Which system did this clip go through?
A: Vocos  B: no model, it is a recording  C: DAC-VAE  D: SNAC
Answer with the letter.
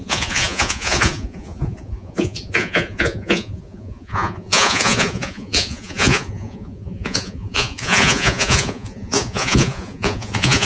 A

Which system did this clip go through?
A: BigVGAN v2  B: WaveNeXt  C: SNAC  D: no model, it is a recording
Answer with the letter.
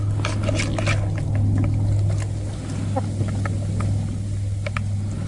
D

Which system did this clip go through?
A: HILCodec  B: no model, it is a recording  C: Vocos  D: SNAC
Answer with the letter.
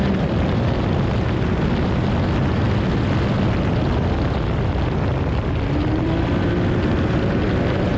B